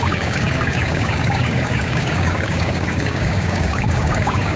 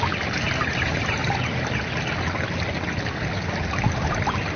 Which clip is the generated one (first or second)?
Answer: first